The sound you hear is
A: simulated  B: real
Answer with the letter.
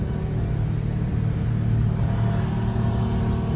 B